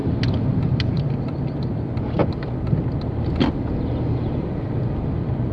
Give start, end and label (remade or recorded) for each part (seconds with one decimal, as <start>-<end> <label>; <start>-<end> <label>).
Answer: 0.0-5.5 recorded